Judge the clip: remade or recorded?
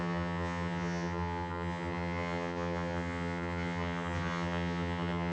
remade